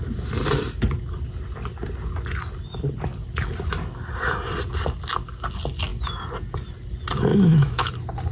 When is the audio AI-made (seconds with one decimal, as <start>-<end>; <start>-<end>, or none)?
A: 7.3-7.9